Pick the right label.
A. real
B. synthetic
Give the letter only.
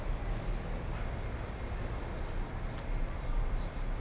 A